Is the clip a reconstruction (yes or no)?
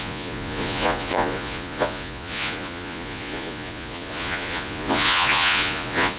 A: yes